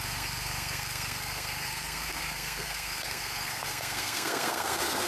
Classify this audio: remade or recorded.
remade